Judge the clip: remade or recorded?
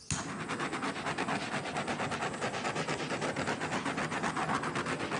recorded